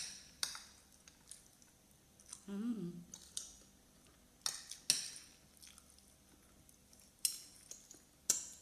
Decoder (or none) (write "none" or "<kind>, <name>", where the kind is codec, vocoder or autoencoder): none